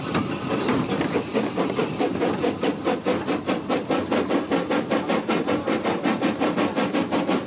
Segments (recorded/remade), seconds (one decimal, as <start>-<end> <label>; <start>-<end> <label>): 0.0-7.5 recorded